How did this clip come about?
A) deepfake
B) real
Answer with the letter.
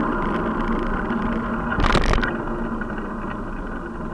B